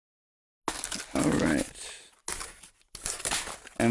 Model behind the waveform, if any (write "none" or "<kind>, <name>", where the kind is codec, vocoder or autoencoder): none